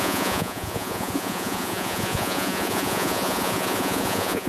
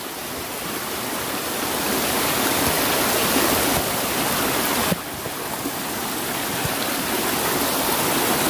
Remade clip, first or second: first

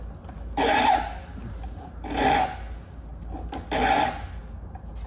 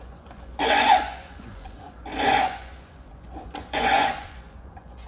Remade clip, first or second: second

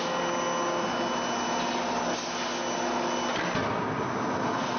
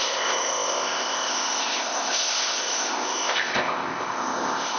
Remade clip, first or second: second